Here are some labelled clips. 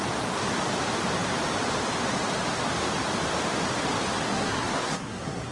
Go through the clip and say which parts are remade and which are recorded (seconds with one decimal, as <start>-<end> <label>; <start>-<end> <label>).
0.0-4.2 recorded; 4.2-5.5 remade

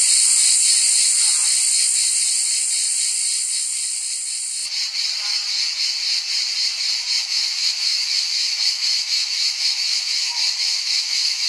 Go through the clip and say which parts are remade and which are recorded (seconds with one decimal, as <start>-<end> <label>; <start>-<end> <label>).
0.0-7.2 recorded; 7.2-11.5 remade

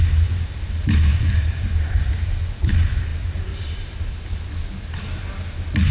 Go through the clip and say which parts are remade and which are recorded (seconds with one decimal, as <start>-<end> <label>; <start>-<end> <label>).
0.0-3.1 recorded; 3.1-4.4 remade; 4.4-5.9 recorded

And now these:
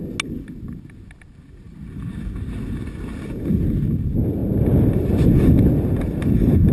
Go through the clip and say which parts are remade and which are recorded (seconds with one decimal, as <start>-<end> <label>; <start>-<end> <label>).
0.0-6.7 recorded

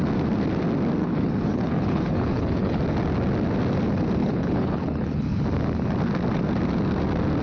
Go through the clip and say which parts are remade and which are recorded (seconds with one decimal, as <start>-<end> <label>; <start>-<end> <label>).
0.0-1.0 recorded; 1.0-2.8 remade; 2.8-4.2 recorded; 4.2-5.4 remade; 5.4-7.4 recorded

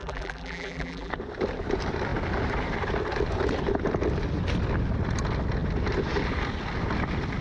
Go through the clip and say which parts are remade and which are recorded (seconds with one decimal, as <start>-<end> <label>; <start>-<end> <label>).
0.0-1.1 remade; 1.1-7.4 recorded